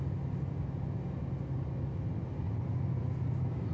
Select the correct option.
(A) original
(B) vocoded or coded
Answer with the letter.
A